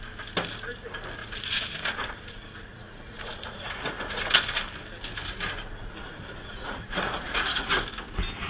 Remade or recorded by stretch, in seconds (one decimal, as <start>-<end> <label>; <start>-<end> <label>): 0.0-1.2 recorded; 1.2-2.2 remade; 2.2-2.7 recorded; 2.7-4.2 remade; 4.2-5.8 recorded; 5.8-7.8 remade; 7.8-8.5 recorded